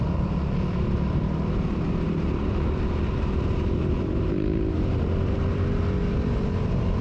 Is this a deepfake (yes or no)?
yes